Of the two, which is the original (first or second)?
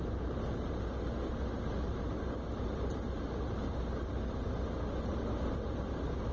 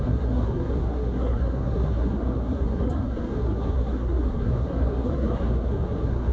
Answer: first